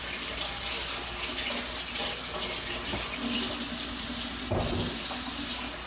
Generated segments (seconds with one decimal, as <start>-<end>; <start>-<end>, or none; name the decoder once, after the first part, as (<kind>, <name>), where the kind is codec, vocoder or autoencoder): none